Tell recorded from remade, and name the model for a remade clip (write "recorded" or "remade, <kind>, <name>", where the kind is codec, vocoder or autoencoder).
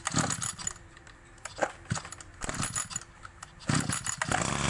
recorded